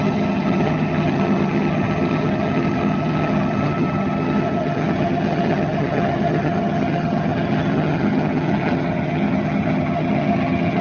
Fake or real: fake